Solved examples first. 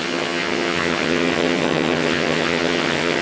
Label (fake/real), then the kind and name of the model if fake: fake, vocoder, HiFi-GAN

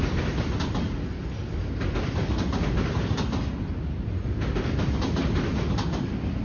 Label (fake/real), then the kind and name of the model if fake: real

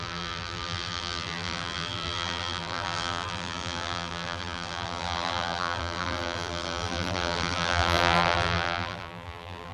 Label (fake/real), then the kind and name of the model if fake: fake, vocoder, BigVGAN v2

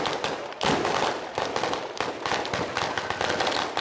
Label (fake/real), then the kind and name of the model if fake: real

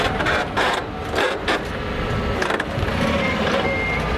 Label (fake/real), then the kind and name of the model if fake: real